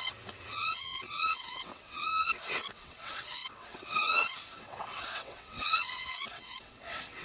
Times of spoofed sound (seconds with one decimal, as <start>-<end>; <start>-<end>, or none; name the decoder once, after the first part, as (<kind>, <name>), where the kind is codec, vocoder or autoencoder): 0.0-7.2 (vocoder, WaveNeXt)